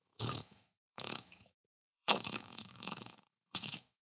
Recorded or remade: remade